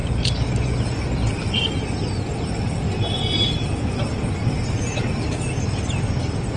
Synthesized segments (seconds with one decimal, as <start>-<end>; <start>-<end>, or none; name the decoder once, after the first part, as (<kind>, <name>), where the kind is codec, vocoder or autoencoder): none